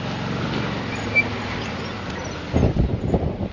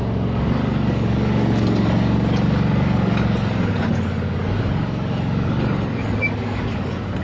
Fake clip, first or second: second